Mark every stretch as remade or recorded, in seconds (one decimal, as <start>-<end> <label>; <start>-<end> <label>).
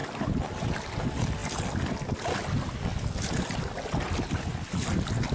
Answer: 0.0-5.3 recorded